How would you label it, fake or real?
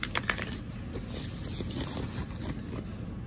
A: real